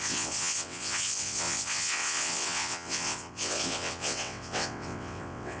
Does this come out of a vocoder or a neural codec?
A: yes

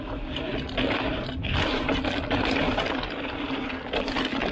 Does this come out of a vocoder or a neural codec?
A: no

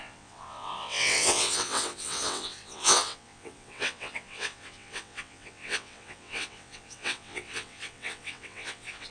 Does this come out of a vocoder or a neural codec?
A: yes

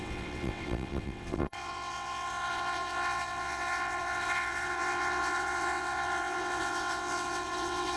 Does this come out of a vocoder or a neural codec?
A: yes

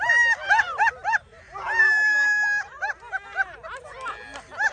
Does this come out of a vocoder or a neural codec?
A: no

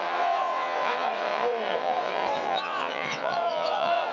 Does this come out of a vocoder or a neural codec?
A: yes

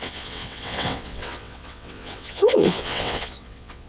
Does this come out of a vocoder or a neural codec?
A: yes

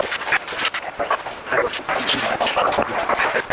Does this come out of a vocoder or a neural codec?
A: no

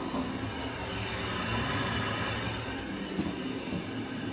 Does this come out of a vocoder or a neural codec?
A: no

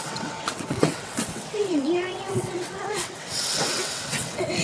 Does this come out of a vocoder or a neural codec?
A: yes